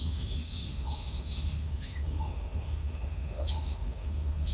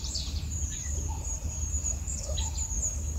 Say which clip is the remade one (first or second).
first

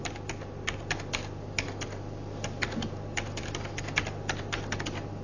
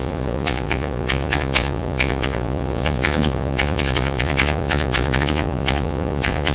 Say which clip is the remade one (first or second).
second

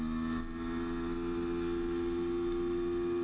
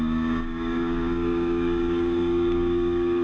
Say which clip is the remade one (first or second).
second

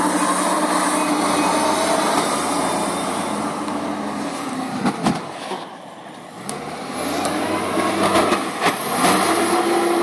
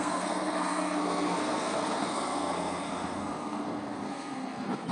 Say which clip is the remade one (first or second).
second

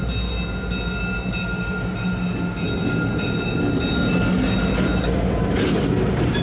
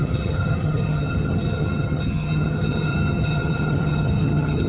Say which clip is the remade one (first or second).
second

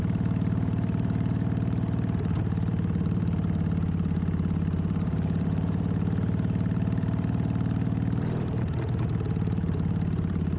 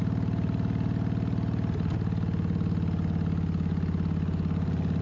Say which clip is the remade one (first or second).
first